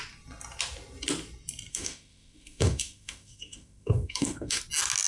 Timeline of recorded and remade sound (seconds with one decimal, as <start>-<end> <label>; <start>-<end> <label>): 0.0-1.7 recorded; 1.7-4.6 remade; 4.6-5.1 recorded